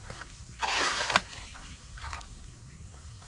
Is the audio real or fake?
fake